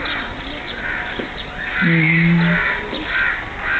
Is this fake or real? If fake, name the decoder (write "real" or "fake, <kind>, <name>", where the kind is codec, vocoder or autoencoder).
real